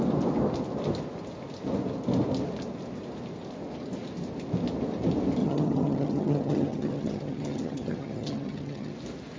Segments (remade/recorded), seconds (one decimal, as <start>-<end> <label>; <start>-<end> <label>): 0.0-5.4 recorded; 5.4-8.9 remade; 8.9-9.4 recorded